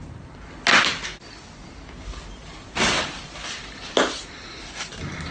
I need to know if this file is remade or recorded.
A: recorded